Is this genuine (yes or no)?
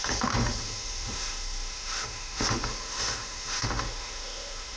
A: no